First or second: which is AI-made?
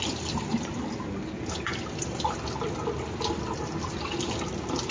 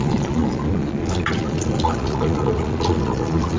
second